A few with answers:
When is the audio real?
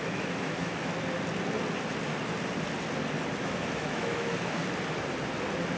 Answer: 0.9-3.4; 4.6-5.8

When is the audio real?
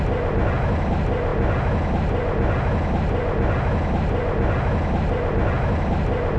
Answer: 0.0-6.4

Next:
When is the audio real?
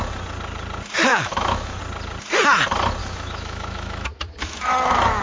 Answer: 0.0-1.1; 1.8-3.0